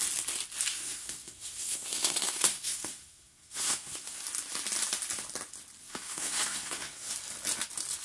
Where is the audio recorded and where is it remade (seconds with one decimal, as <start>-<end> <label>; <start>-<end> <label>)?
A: 0.0-0.7 recorded; 0.7-4.2 remade; 4.2-5.8 recorded; 5.8-7.1 remade; 7.1-8.0 recorded